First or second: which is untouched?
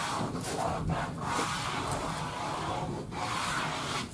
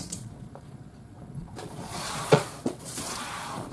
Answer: first